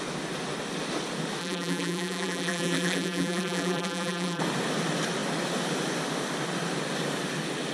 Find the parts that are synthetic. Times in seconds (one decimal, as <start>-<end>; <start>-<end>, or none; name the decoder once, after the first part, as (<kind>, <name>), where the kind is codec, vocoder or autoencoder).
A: 1.4-4.4 (vocoder, BigVGAN v2)